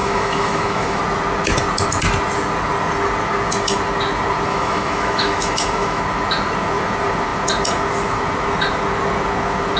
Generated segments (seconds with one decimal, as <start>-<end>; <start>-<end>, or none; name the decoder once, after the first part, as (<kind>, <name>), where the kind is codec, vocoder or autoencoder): 0.0-1.0 (autoencoder, DAC-VAE); 4.5-6.0